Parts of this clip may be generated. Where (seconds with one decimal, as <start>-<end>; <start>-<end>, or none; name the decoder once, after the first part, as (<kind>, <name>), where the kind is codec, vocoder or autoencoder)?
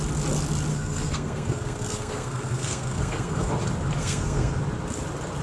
0.7-3.5 (codec, SNAC); 4.0-4.5